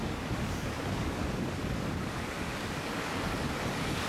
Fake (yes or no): yes